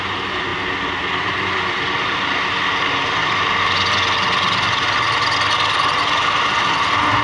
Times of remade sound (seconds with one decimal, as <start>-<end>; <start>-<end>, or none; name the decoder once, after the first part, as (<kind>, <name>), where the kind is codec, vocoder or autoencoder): none